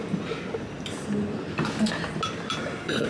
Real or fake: real